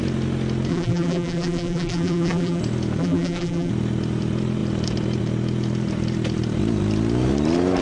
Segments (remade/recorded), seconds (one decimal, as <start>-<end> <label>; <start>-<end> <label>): 0.0-0.7 recorded; 0.7-2.6 remade; 2.6-3.0 recorded; 3.0-3.7 remade; 3.7-7.8 recorded